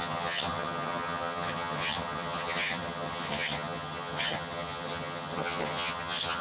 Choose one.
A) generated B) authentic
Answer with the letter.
A